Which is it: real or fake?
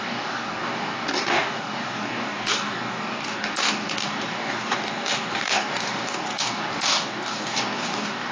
fake